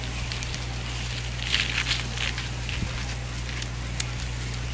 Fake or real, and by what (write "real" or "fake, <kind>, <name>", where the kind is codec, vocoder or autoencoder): real